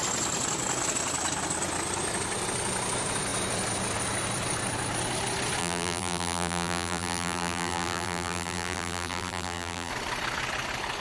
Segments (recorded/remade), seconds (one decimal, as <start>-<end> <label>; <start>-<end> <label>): 0.0-5.6 recorded; 5.6-9.9 remade; 9.9-11.0 recorded